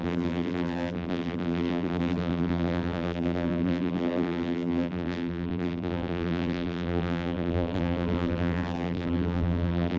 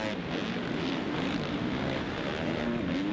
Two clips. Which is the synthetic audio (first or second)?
first